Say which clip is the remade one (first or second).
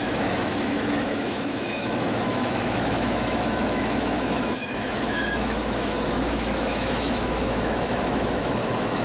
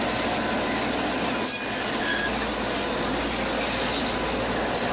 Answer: first